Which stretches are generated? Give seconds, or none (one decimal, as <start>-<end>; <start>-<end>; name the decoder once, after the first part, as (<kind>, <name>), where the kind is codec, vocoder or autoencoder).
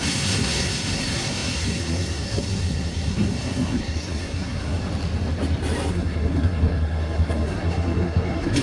0.0-4.8 (codec, SNAC); 5.9-8.6